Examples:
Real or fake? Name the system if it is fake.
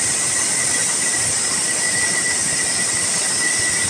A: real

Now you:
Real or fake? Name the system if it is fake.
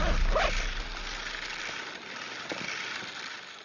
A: real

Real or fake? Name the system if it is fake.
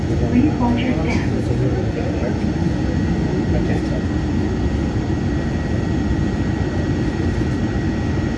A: real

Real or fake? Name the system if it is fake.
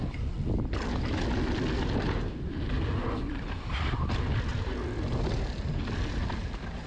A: real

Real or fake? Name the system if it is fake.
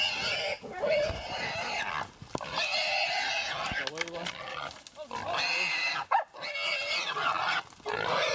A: real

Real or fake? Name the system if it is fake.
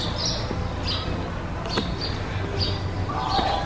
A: real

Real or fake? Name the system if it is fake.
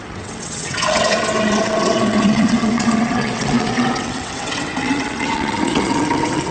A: fake, vocoder, WaveNeXt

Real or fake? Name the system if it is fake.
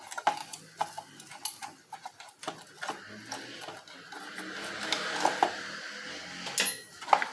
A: real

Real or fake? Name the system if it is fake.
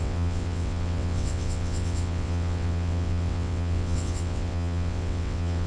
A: fake, vocoder, WaveNeXt